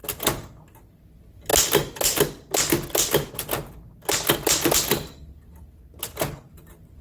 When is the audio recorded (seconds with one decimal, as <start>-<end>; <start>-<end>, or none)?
0.0-7.0